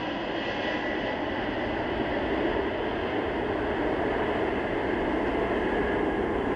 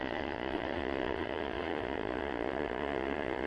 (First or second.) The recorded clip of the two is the first